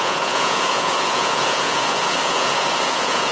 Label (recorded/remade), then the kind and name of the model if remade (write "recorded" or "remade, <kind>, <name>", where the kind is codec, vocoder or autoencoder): remade, vocoder, Vocos